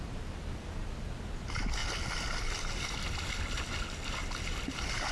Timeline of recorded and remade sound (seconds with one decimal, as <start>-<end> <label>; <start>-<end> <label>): 0.0-5.1 recorded